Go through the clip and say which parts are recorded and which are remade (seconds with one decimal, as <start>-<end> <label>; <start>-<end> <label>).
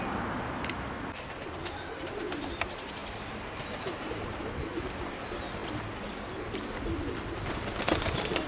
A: 0.0-8.5 recorded